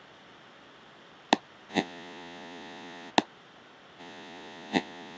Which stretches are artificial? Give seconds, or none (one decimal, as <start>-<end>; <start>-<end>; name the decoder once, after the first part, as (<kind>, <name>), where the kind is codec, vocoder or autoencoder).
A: 1.7-3.1 (vocoder, Vocos); 4.0-5.2